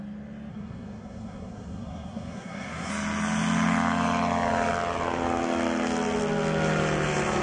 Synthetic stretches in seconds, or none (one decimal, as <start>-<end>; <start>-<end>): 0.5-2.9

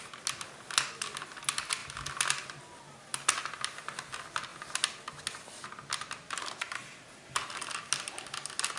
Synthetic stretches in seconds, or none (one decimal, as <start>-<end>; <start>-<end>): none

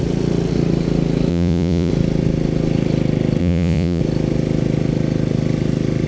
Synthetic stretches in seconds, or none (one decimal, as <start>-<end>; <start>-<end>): 1.3-1.9; 3.4-4.0